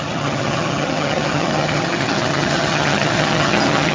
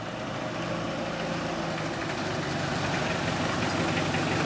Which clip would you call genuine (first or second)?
second